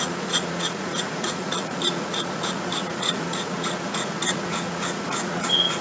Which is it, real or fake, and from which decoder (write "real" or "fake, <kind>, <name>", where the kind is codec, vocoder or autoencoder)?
fake, vocoder, Vocos